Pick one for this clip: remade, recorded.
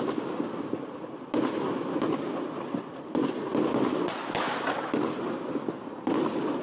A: recorded